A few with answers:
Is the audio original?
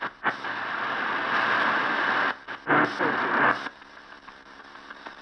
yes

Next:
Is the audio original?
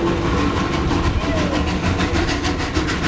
yes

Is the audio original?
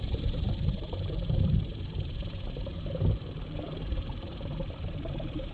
no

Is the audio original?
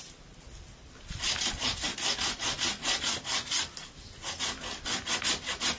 yes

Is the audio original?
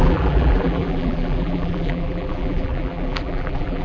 no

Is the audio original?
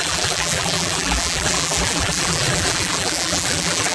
no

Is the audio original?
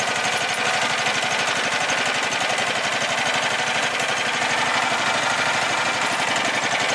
yes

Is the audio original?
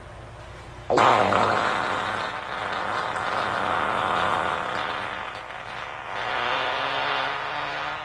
yes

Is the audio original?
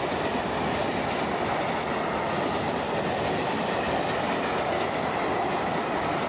yes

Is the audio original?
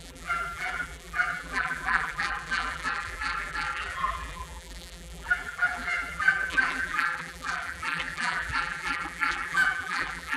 no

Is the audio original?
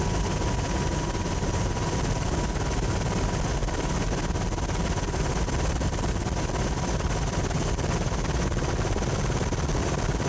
yes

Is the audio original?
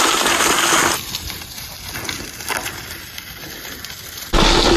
yes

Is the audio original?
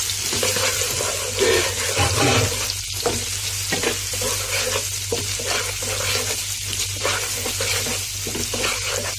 yes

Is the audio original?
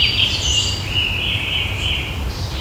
no